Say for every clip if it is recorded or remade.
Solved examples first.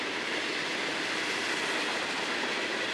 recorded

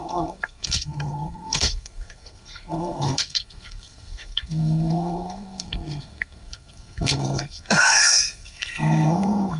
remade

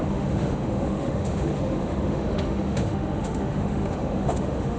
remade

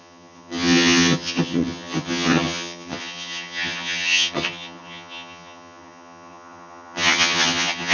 remade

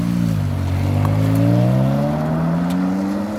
recorded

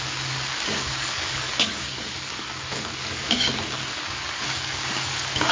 remade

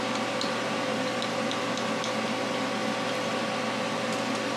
recorded